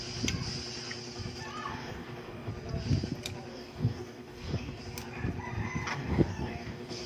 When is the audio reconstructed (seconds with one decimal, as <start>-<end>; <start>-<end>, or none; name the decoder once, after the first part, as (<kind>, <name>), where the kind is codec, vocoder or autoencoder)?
1.7-2.5 (codec, DAC); 3.5-4.8; 5.9-7.1